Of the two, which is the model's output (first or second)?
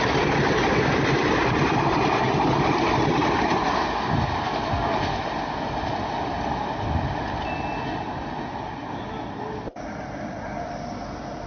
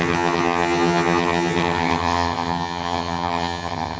second